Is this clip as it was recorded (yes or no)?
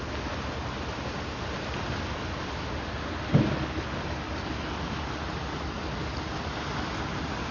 yes